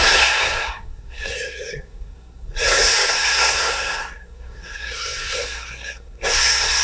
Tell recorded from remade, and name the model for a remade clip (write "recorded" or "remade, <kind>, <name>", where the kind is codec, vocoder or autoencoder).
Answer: remade, codec, SNAC